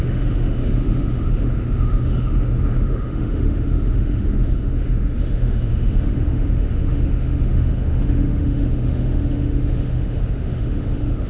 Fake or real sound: fake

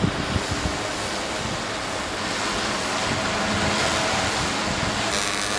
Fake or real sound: real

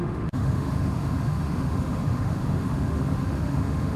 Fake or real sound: fake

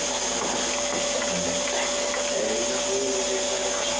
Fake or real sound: real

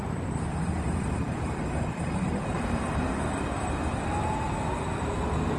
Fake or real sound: real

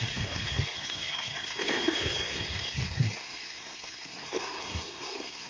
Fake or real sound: fake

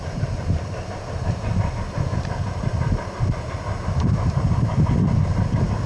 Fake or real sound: fake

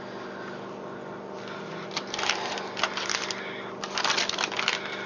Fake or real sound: real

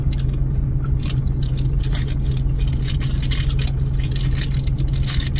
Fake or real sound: real